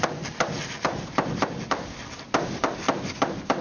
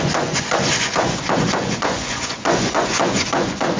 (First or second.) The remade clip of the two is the second